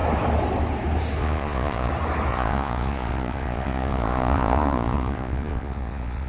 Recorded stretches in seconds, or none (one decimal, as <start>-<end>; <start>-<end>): 0.0-1.2; 1.9-2.3